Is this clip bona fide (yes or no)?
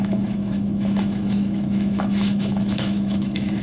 no